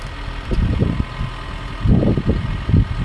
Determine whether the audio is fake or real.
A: real